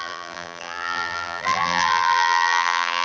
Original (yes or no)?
no